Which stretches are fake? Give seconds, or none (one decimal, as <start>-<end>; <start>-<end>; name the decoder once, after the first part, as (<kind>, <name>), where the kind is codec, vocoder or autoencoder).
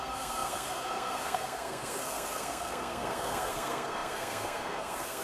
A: 0.0-5.2 (codec, SNAC)